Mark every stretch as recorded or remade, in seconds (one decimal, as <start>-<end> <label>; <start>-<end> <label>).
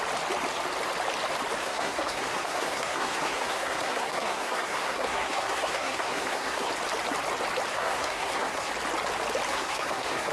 0.0-1.6 recorded; 1.6-6.7 remade; 6.7-7.7 recorded; 7.7-8.7 remade; 8.7-9.5 recorded; 9.5-10.3 remade